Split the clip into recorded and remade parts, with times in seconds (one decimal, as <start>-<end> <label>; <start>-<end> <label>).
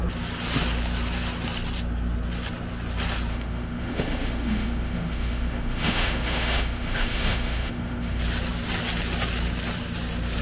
0.0-3.3 recorded; 3.3-8.2 remade; 8.2-10.4 recorded